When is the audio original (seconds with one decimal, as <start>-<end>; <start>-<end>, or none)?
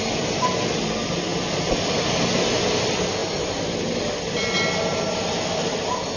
0.0-6.2